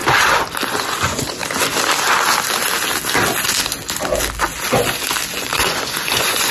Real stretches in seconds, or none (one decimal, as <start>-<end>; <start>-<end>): 0.0-0.7; 1.4-5.3